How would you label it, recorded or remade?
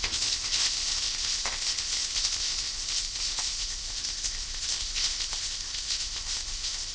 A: remade